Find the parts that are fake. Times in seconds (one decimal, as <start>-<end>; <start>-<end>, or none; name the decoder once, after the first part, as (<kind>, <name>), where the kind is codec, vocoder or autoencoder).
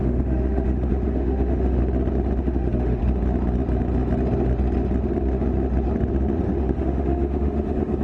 0.0-1.8 (autoencoder, DAC-VAE); 2.4-3.0; 6.5-8.0